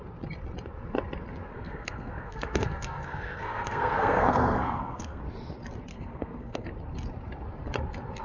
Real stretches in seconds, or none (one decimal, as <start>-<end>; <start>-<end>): 0.0-1.5; 5.2-5.9; 6.7-8.2